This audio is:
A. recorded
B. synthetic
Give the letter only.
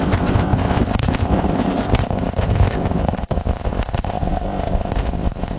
B